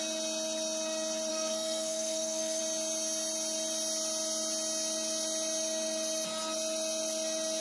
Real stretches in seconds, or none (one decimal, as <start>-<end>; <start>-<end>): 0.0-1.3; 2.6-7.6